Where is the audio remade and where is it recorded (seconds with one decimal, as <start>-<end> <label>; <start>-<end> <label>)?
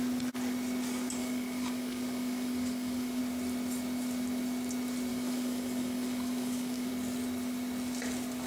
0.0-1.2 recorded; 1.2-3.2 remade; 3.2-5.1 recorded; 5.1-6.9 remade; 6.9-8.5 recorded